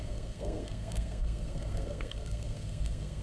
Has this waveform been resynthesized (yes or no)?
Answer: yes